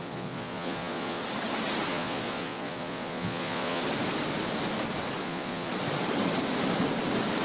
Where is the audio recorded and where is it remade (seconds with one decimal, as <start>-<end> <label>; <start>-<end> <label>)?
0.0-1.2 remade; 1.2-1.9 recorded; 1.9-3.8 remade; 3.8-5.2 recorded; 5.2-5.7 remade; 5.7-7.4 recorded